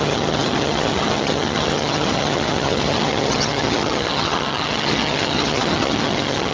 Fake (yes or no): yes